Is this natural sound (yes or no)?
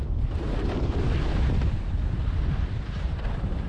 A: yes